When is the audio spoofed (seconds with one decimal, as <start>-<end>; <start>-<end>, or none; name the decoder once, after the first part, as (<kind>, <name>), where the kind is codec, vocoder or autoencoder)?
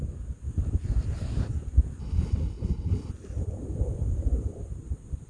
2.0-3.1 (codec, HILCodec)